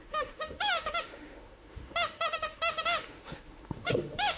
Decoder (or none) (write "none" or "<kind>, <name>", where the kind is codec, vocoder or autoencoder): autoencoder, DAC-VAE